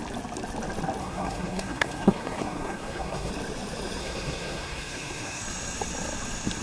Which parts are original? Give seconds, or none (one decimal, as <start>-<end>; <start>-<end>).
0.0-1.0; 3.3-4.0; 5.4-6.6